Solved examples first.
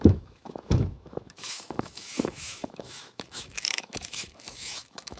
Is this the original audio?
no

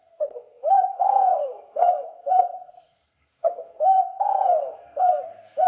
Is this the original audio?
no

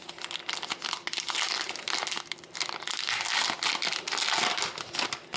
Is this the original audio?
yes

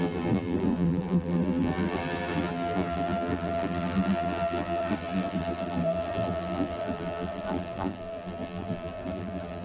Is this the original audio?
no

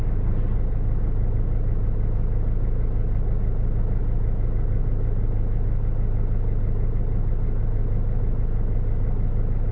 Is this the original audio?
yes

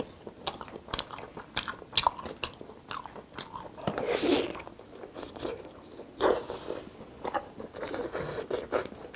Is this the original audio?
yes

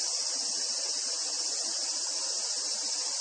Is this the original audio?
yes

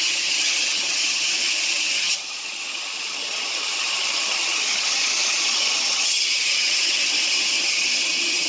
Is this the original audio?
no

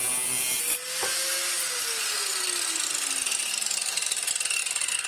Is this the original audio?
yes